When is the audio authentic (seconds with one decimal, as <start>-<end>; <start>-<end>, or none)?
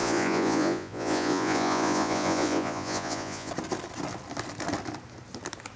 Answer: 3.5-5.8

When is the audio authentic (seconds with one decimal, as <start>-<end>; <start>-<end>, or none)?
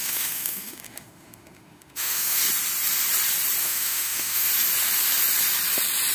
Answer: 2.4-3.6; 4.5-6.1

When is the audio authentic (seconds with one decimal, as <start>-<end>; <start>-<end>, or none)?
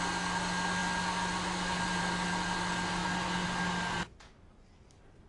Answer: 0.0-5.3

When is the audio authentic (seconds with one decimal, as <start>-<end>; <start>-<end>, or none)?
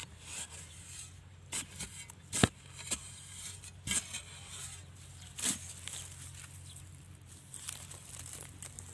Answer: 0.0-8.9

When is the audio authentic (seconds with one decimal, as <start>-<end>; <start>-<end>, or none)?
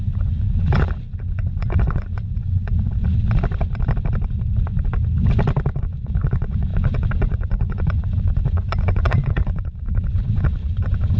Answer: 3.0-5.8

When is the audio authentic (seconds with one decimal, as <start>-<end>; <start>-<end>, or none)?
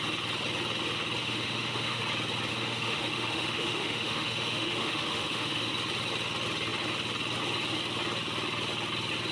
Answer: 0.0-1.2; 2.0-2.5; 5.7-9.3